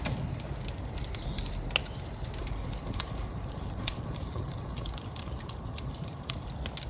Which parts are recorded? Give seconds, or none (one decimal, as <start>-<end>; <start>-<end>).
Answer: 0.0-2.4; 6.5-6.9